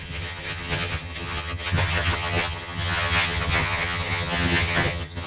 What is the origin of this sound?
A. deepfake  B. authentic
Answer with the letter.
A